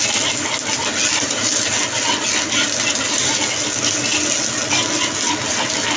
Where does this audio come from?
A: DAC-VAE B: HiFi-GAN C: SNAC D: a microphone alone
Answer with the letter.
D